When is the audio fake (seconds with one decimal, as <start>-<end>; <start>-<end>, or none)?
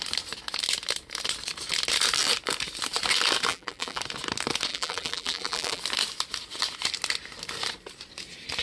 3.5-4.0; 4.7-5.8